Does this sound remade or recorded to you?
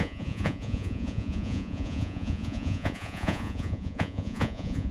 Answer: remade